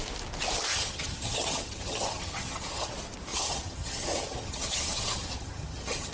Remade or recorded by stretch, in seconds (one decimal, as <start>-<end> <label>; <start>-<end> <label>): 0.0-0.7 recorded; 0.7-2.9 remade; 2.9-3.3 recorded; 3.3-6.1 remade